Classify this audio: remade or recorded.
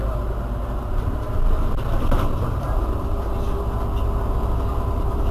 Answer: recorded